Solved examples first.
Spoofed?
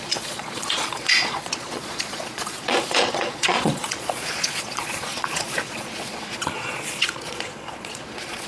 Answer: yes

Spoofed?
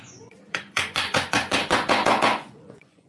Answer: yes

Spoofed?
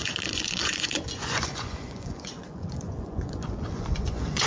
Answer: yes